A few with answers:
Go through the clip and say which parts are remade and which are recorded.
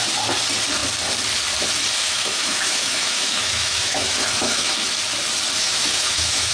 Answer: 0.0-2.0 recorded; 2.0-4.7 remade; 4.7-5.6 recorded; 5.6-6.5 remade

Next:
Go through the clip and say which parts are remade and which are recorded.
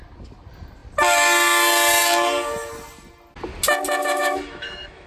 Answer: 0.0-4.0 recorded; 4.0-5.1 remade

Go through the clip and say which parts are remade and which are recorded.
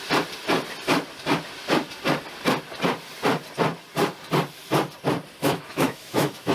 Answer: 0.0-5.4 recorded; 5.4-6.5 remade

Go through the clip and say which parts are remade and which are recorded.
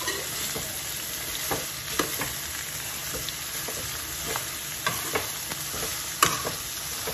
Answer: 0.0-7.1 recorded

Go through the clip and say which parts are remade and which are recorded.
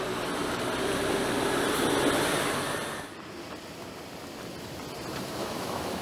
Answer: 0.0-5.4 recorded; 5.4-6.0 remade